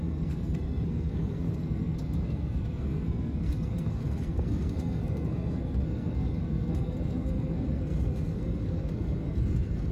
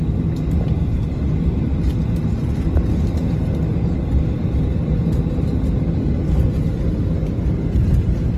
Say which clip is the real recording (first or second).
second